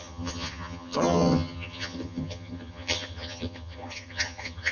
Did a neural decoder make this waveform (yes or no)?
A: yes